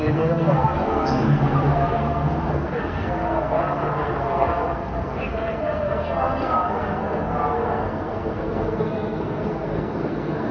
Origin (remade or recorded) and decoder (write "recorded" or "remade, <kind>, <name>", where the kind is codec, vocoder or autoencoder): remade, codec, SNAC